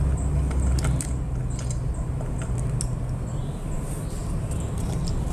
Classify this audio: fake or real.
real